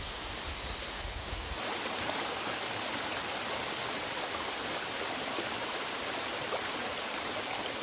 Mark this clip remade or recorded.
recorded